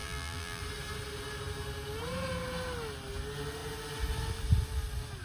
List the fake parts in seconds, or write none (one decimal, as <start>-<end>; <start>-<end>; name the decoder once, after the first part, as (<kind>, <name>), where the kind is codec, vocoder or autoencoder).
0.0-0.6 (vocoder, BigVGAN v2)

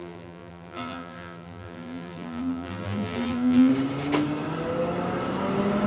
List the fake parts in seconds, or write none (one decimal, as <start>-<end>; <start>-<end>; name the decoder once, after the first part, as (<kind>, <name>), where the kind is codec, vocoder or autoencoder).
0.0-3.7 (vocoder, BigVGAN v2)

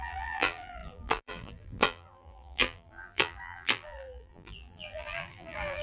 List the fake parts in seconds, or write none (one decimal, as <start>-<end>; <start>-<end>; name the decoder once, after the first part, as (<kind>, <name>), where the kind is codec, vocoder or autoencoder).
0.0-5.8 (vocoder, BigVGAN v2)

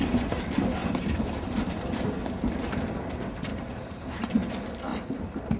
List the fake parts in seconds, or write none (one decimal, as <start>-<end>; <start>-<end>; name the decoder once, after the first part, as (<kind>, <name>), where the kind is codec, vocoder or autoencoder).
0.8-2.2 (vocoder, BigVGAN v2); 3.5-4.3

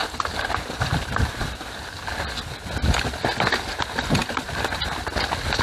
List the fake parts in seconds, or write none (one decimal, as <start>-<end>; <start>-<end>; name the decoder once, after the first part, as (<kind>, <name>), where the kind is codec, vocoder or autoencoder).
0.0-0.5 (vocoder, BigVGAN v2); 0.9-1.9